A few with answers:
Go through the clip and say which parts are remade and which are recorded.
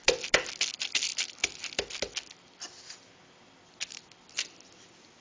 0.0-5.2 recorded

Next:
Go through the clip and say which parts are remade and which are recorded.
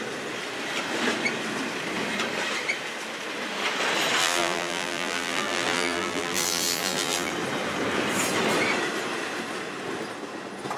0.0-4.2 recorded; 4.2-7.3 remade; 7.3-10.8 recorded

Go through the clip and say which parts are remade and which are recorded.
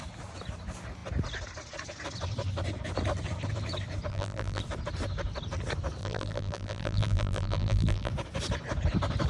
0.0-4.1 recorded; 4.1-4.6 remade; 4.6-6.0 recorded; 6.0-8.1 remade; 8.1-9.3 recorded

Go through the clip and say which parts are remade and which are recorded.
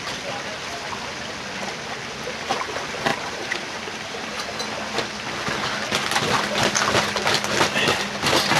0.0-3.1 recorded; 3.1-4.6 remade; 4.6-8.6 recorded